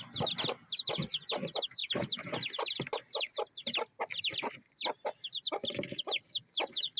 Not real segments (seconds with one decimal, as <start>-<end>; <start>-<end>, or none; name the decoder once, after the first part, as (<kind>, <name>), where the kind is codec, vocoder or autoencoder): none